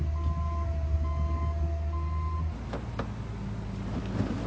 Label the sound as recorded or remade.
recorded